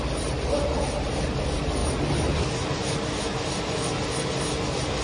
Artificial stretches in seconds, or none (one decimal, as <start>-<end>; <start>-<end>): none